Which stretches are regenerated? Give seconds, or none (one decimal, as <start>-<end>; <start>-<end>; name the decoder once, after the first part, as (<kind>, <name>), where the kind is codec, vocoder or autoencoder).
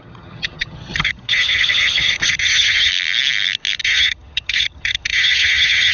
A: 0.0-2.9 (vocoder, HiFi-GAN); 3.8-5.9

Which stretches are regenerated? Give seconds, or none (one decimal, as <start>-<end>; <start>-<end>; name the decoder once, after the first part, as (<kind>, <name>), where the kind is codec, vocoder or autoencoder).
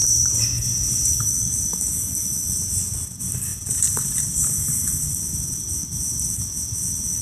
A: 0.0-2.7 (vocoder, BigVGAN v2); 3.5-5.1; 5.7-6.4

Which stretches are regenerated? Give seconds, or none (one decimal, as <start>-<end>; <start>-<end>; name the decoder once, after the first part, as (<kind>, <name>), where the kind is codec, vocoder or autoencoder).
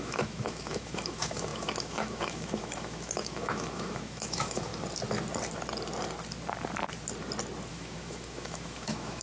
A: 0.0-4.7 (autoencoder, DAC-VAE); 7.7-9.2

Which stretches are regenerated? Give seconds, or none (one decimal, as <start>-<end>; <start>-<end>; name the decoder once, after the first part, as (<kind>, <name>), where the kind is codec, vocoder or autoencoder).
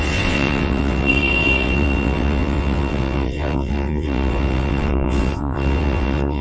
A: 0.0-6.4 (vocoder, WaveNeXt)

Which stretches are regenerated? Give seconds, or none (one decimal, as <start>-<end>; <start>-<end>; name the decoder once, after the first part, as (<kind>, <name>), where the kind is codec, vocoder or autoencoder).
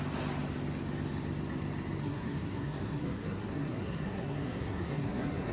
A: 2.0-5.5 (codec, SNAC)